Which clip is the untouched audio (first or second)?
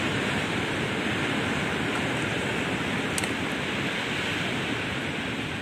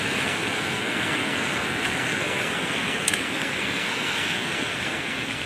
first